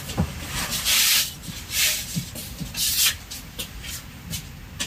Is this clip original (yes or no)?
yes